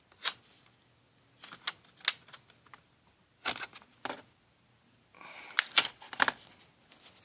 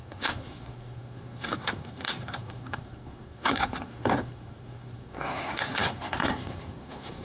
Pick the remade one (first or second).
second